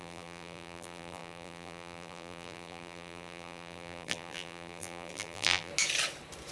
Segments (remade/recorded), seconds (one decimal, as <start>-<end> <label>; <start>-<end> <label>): 0.0-5.7 remade; 5.7-6.5 recorded